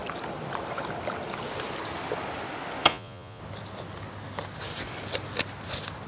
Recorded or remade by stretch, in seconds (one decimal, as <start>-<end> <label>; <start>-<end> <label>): 0.0-2.9 recorded; 2.9-3.4 remade; 3.4-6.1 recorded